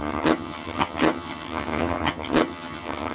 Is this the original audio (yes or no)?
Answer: no